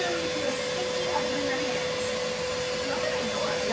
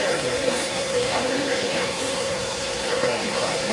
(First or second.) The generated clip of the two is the second